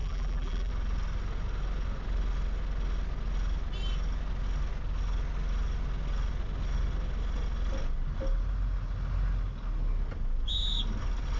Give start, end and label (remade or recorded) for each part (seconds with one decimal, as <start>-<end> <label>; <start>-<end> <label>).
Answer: 0.0-0.7 remade; 0.7-11.4 recorded